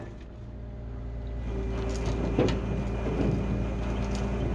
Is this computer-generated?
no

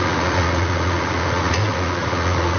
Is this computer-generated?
yes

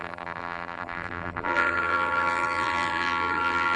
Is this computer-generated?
yes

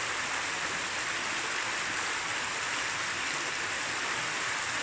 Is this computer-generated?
no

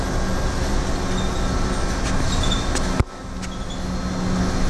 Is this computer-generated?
no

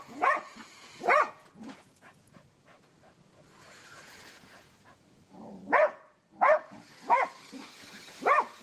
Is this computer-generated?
yes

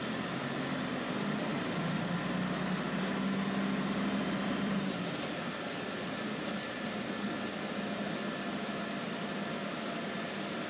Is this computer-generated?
no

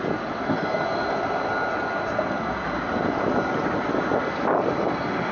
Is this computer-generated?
no